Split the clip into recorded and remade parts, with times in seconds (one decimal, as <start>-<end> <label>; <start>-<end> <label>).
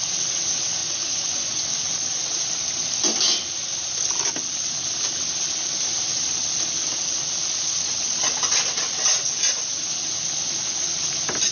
0.0-0.8 recorded; 0.8-1.7 remade; 1.7-11.5 recorded